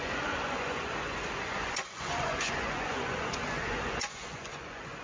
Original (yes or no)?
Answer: no